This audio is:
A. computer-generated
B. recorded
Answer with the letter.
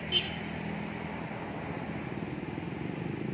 B